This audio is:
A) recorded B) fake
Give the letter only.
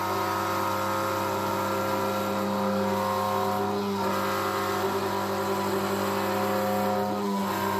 A